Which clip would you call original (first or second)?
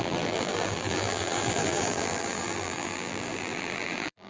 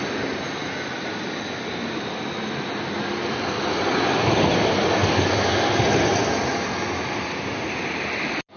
second